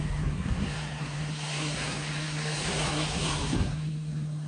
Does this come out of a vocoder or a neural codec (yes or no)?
yes